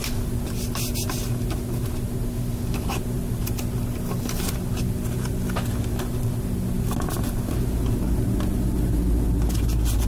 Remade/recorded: recorded